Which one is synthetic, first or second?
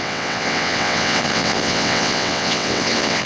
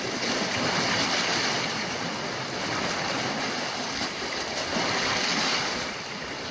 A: first